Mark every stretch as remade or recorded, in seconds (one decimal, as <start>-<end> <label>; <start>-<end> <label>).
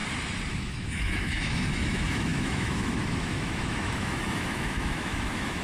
0.0-0.5 recorded; 0.5-5.6 remade